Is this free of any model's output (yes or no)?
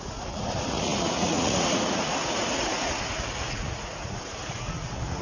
no